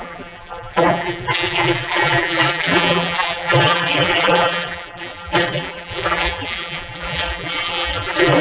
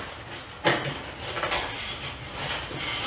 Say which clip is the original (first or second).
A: second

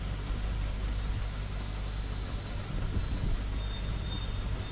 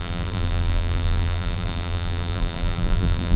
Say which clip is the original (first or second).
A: first